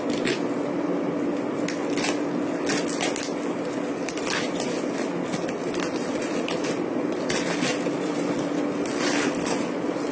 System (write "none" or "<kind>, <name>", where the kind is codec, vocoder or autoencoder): none